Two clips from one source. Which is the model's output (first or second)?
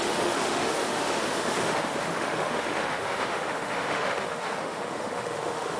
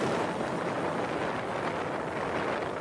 first